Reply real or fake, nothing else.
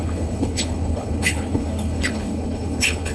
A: fake